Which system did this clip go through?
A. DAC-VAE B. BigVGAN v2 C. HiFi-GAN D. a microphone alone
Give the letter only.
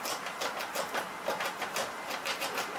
D